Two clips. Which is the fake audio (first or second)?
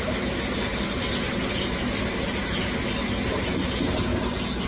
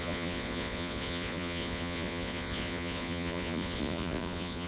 second